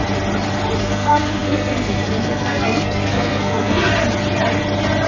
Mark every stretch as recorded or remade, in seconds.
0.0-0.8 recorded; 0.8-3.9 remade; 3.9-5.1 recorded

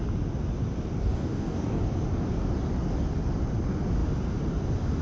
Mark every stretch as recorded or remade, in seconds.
0.0-1.0 recorded; 1.0-1.8 remade; 1.8-5.0 recorded

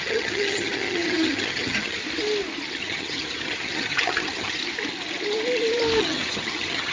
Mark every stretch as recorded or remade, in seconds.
0.0-2.0 remade; 2.0-2.8 recorded; 2.8-4.6 remade; 4.6-6.0 recorded; 6.0-6.9 remade

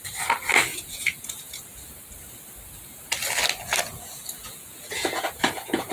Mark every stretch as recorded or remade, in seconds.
0.0-0.7 recorded; 0.7-1.8 remade; 1.8-3.9 recorded; 3.9-5.9 remade

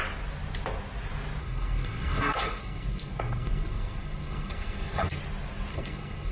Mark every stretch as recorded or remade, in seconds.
0.0-1.4 recorded; 1.4-5.2 remade; 5.2-5.7 recorded; 5.7-6.3 remade

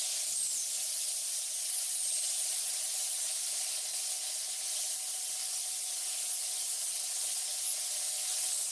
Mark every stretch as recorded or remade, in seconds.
0.0-6.7 recorded; 6.7-7.5 remade; 7.5-8.7 recorded

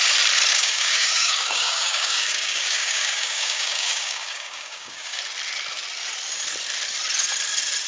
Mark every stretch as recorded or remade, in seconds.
0.0-0.5 recorded; 0.5-5.2 remade; 5.2-7.9 recorded

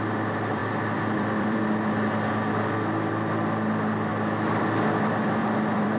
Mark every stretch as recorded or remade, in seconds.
0.0-0.6 recorded; 0.6-1.6 remade; 1.6-5.4 recorded; 5.4-6.0 remade